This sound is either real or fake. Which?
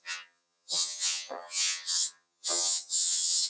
fake